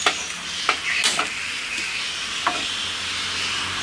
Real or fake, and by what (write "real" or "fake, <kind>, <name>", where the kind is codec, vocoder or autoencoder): real